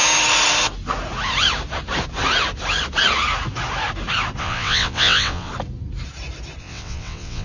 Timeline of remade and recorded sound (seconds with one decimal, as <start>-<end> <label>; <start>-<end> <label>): 0.0-4.4 recorded; 4.4-5.5 remade; 5.5-6.6 recorded; 6.6-7.4 remade